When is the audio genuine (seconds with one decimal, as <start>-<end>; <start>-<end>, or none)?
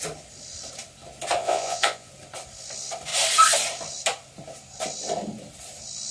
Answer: 0.0-1.4; 2.1-6.1